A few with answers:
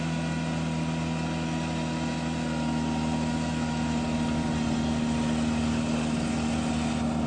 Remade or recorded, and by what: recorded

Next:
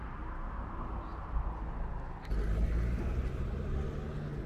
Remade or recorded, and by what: recorded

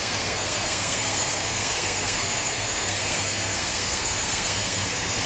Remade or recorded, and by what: remade, codec, SNAC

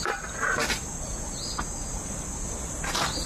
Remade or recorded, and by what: recorded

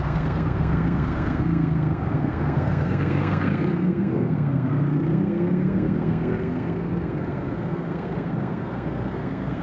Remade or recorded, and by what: remade, codec, SNAC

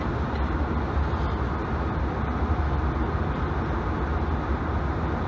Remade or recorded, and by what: recorded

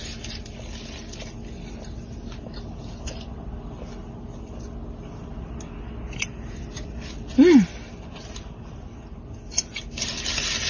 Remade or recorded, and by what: recorded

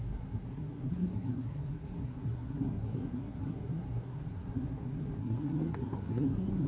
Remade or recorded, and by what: remade, codec, SNAC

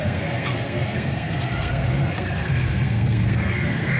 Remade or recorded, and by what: remade, codec, SNAC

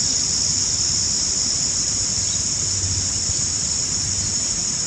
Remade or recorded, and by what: recorded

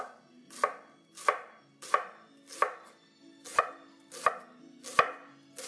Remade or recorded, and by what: recorded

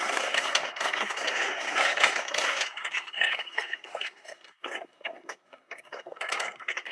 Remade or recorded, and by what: remade, codec, SNAC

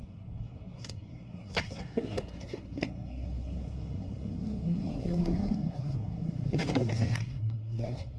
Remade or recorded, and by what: remade, codec, SNAC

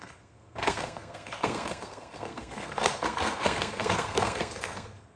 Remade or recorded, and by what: remade, codec, SNAC